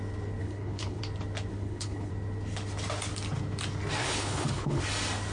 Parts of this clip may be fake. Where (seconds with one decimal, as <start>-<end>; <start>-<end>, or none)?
0.4-1.0; 1.5-2.1; 4.0-4.8